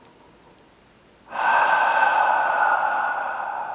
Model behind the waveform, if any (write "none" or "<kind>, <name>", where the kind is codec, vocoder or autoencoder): none